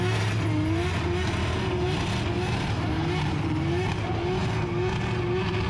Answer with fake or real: real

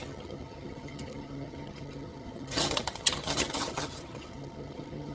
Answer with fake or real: fake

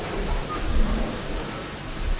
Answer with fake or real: real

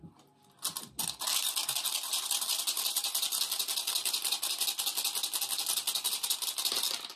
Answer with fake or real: real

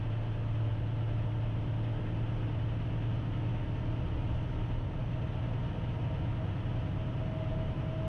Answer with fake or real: real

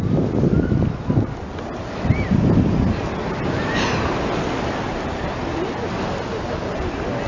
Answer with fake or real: real